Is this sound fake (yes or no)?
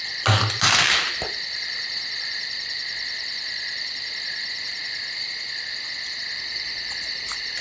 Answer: no